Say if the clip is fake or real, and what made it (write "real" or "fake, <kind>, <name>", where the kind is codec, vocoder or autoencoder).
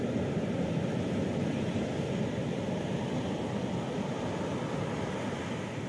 real